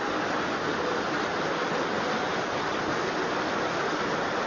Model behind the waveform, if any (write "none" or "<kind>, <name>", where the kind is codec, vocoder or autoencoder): none